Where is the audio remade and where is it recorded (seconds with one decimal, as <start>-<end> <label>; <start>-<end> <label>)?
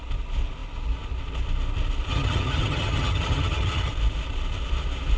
0.0-2.1 recorded; 2.1-3.9 remade; 3.9-5.2 recorded